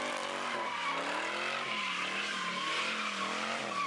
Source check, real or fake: real